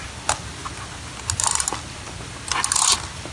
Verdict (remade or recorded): recorded